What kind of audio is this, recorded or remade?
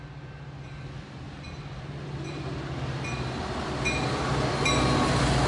recorded